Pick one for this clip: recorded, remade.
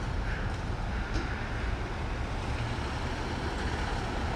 recorded